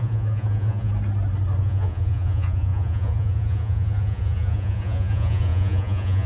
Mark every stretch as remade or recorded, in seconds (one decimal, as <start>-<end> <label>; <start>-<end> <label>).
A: 0.0-0.9 remade; 0.9-1.6 recorded; 1.6-6.3 remade